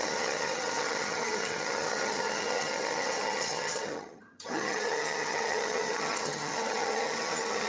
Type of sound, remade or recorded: remade